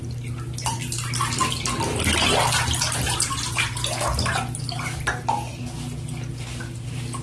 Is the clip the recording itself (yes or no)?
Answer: yes